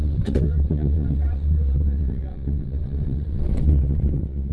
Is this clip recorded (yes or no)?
no